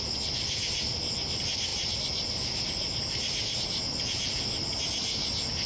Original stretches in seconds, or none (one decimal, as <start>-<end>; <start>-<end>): 0.0-5.7